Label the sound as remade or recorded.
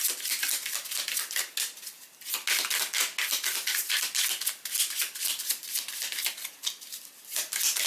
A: recorded